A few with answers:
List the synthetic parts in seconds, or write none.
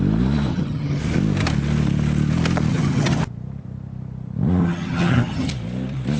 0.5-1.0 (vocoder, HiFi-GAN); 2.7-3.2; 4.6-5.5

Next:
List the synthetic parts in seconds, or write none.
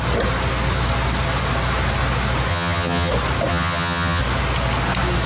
2.5-3.1 (vocoder, HiFi-GAN); 3.5-4.2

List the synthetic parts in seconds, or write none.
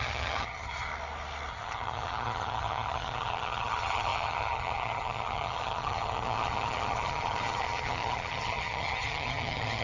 0.0-0.9 (vocoder, HiFi-GAN); 1.5-9.8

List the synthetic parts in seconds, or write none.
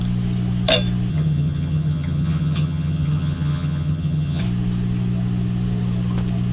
1.1-4.4 (vocoder, HiFi-GAN)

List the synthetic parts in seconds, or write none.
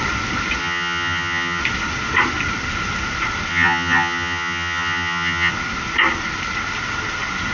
0.6-1.6 (vocoder, HiFi-GAN); 3.5-5.5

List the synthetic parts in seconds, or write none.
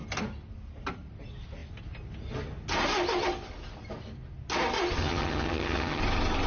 5.0-6.0 (vocoder, HiFi-GAN)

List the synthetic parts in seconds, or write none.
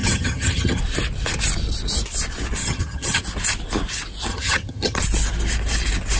0.0-0.8 (vocoder, HiFi-GAN); 2.6-3.2; 4.3-5.0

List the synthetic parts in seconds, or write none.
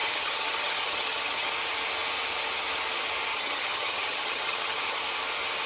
0.0-1.5 (vocoder, HiFi-GAN); 3.3-5.0